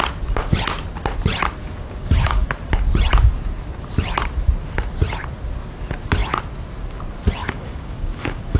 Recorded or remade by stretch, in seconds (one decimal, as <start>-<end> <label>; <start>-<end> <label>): 0.0-1.6 recorded; 1.6-2.5 remade; 2.5-7.4 recorded; 7.4-8.6 remade